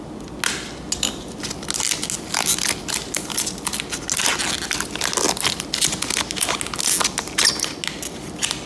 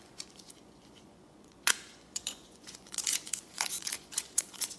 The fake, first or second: second